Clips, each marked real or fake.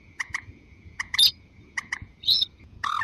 fake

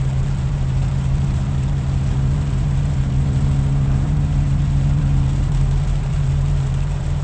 fake